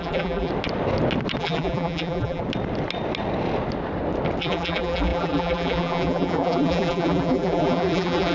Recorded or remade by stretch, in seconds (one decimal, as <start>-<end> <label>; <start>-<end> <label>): 0.0-0.5 remade; 0.5-1.4 recorded; 1.4-2.4 remade; 2.4-4.4 recorded; 4.4-8.3 remade